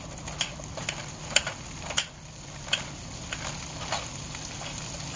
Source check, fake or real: real